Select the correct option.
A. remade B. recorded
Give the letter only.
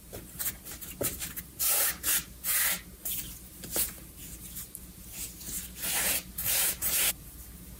A